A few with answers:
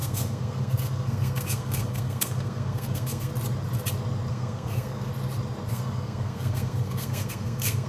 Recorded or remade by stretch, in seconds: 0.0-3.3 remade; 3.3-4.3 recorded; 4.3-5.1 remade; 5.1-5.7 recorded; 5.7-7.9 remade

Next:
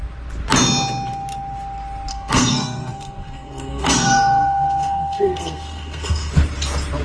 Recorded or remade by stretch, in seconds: 0.0-2.1 recorded; 2.1-6.3 remade; 6.3-7.0 recorded